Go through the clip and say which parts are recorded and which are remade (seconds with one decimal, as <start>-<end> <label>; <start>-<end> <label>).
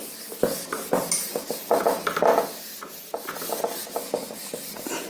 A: 0.0-5.1 recorded